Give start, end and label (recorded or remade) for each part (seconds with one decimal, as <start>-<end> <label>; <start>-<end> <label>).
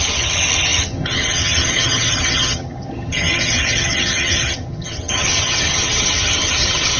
0.0-7.0 remade